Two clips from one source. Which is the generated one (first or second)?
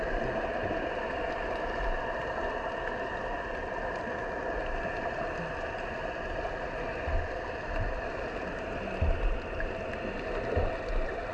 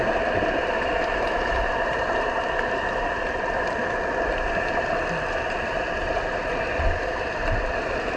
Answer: second